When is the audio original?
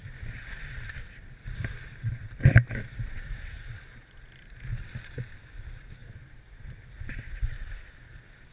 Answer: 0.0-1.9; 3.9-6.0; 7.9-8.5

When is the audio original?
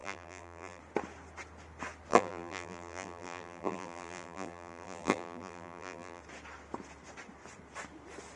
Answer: 0.8-2.1; 6.2-8.4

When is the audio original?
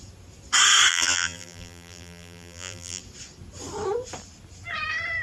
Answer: 0.0-0.9; 3.0-5.2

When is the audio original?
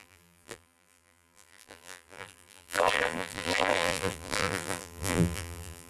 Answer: none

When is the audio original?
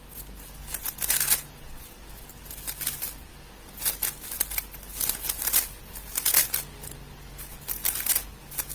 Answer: 0.0-4.9; 5.8-8.7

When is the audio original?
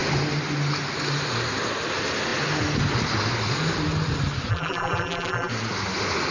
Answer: 0.0-4.5; 5.5-6.3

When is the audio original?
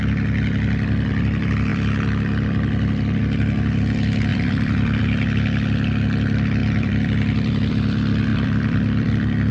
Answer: 0.0-4.3; 5.0-6.6; 7.7-8.3; 9.1-9.5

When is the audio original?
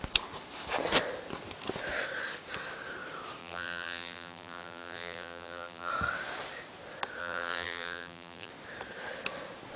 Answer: 0.0-3.4; 5.9-7.2; 8.5-9.8